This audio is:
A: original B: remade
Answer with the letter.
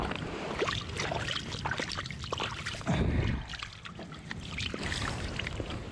A